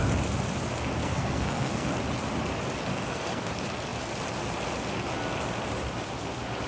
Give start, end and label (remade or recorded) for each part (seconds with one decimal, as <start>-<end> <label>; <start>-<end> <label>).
0.0-1.0 recorded; 1.0-1.9 remade; 1.9-2.9 recorded; 2.9-3.5 remade; 3.5-6.7 recorded